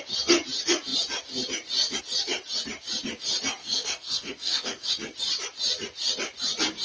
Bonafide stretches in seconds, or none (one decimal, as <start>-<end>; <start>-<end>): 0.0-3.6; 4.9-6.8